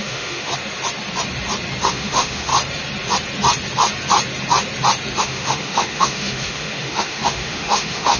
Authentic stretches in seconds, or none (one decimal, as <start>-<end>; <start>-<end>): 0.5-1.9; 2.5-5.2